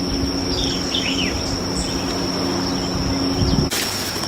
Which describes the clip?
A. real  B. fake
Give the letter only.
A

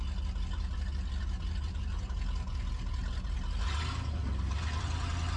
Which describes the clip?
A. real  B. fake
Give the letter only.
B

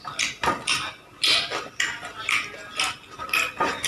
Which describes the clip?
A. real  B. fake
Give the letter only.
A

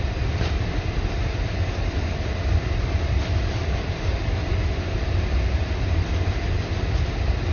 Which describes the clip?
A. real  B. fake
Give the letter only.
B